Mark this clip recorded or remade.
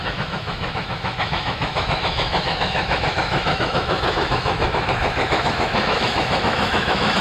remade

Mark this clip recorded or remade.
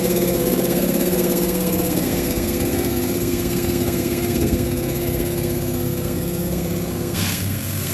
remade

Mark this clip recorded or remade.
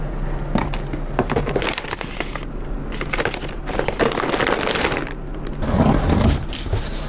recorded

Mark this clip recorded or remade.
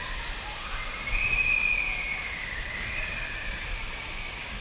recorded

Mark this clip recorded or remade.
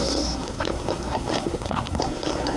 remade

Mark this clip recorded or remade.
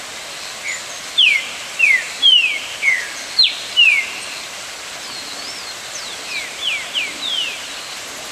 recorded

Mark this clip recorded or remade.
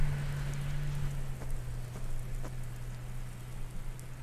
recorded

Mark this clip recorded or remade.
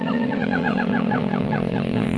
remade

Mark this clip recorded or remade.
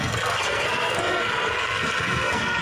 remade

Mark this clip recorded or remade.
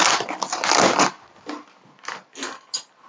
recorded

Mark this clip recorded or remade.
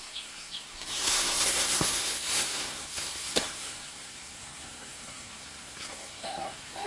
remade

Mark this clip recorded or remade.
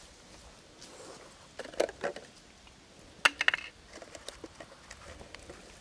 recorded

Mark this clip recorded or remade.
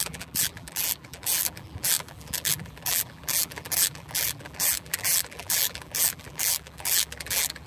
remade